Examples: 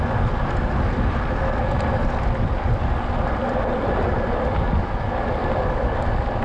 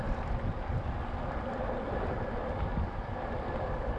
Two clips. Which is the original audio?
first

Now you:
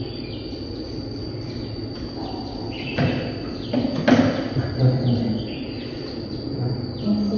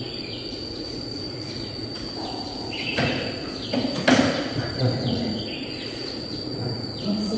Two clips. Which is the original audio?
first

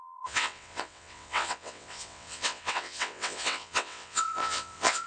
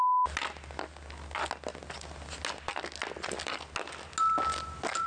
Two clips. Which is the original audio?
second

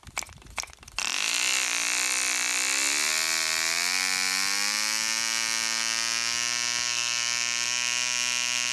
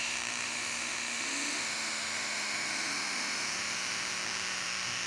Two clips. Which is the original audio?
first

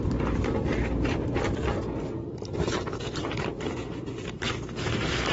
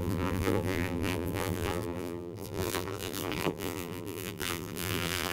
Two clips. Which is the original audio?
first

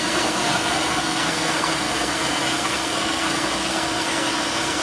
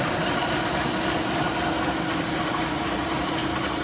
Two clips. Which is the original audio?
second